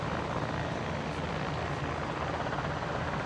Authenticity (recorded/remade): recorded